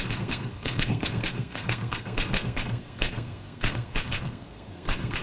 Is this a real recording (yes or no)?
no